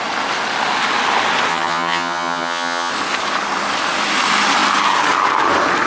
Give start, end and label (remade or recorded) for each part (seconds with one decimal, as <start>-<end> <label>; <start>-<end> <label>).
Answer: 0.0-1.5 recorded; 1.5-2.9 remade; 2.9-5.9 recorded